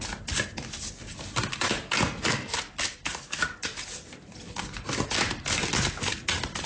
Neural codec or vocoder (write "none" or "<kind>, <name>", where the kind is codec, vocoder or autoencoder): none